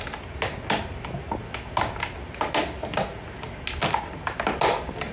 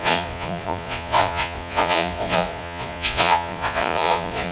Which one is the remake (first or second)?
second